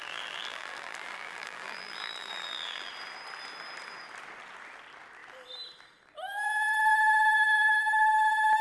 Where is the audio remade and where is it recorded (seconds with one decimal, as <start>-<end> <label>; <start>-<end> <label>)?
0.0-2.9 remade; 2.9-8.6 recorded